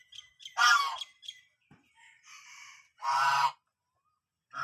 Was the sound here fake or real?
real